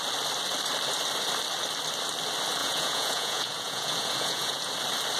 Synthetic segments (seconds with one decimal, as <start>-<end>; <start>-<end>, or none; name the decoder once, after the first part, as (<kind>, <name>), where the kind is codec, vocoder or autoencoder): 2.6-4.7 (vocoder, Vocos)